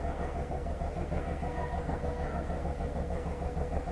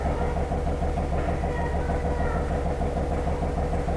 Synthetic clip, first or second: first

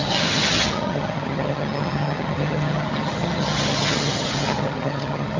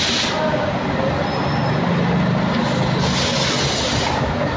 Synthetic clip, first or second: first